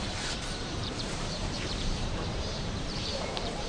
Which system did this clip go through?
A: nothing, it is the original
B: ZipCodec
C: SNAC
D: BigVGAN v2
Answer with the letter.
D